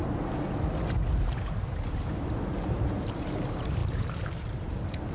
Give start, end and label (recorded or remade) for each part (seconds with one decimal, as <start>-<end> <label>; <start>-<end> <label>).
0.0-1.1 recorded; 1.1-5.1 remade